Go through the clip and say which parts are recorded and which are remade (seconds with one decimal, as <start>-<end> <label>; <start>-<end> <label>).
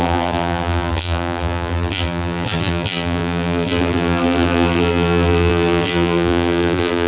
0.0-7.1 remade